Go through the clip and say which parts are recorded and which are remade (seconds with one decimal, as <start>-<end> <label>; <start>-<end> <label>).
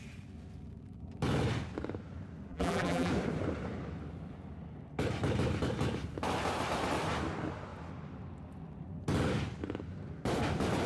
0.0-2.5 recorded; 2.5-3.1 remade; 3.1-10.9 recorded